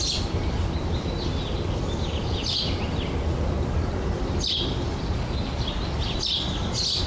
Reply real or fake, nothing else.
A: real